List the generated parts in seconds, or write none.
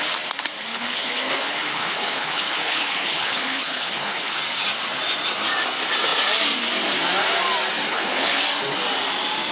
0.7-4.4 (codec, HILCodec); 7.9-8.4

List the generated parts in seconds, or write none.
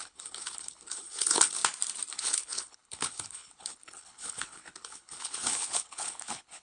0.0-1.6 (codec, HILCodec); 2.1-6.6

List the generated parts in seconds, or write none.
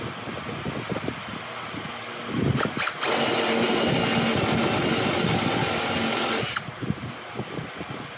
none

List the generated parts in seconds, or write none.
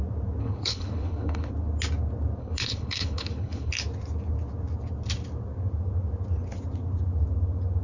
0.4-1.5 (codec, HILCodec); 2.4-3.7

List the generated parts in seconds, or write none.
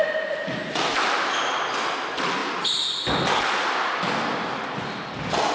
none